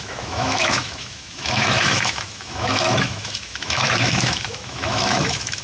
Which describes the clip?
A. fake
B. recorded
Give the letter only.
A